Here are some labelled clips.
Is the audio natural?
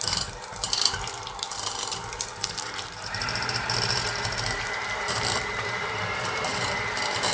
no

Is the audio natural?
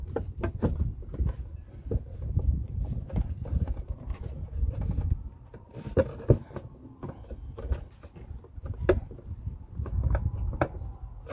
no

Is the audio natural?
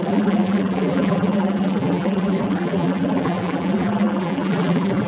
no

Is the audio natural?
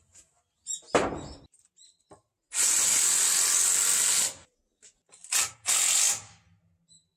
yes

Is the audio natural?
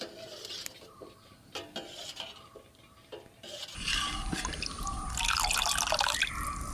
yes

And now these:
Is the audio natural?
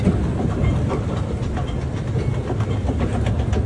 yes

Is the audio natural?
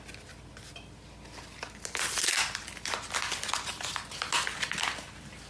yes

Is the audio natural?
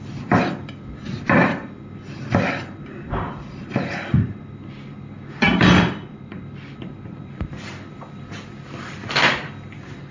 no